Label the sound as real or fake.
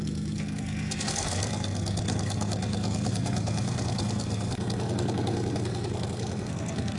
fake